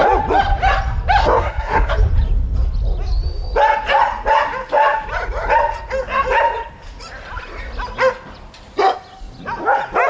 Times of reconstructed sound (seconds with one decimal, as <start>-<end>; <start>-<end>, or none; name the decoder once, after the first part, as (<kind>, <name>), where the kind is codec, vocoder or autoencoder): 1.2-1.9 (codec, SNAC)